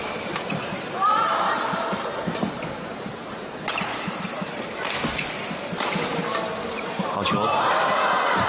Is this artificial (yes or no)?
yes